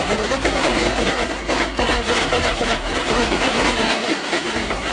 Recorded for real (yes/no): no